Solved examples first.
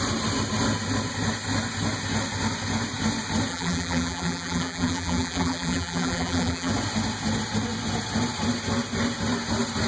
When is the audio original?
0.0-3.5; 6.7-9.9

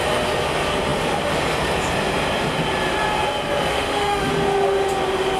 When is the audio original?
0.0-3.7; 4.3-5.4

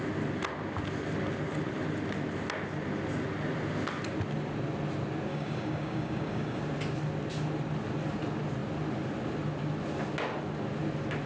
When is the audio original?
0.0-5.3; 6.6-11.3